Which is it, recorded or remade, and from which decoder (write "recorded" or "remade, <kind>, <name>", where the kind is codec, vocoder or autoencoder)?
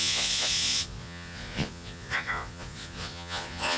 remade, vocoder, Vocos